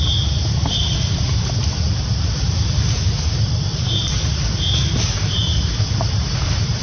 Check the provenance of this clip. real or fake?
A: fake